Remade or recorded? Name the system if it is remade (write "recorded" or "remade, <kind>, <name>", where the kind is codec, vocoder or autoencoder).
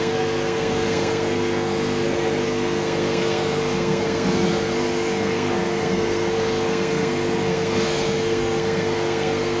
remade, codec, SNAC